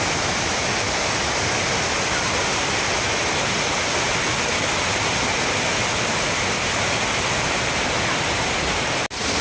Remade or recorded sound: recorded